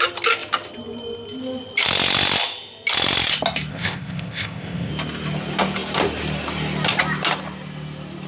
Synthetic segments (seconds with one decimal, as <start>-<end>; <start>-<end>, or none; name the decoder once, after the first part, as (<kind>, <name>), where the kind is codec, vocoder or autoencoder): 3.7-4.9 (codec, ZipCodec)